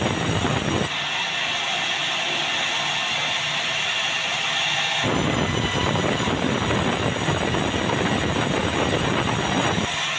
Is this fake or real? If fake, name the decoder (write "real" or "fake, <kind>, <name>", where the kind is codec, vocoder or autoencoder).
real